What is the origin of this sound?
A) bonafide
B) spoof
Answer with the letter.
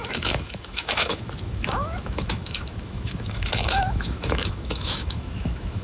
B